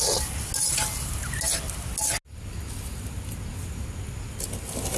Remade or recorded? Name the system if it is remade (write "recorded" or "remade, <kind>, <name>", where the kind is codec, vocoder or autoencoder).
recorded